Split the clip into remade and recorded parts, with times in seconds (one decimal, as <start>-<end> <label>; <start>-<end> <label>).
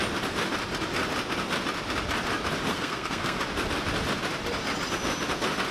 0.0-2.7 recorded; 2.7-3.4 remade; 3.4-5.7 recorded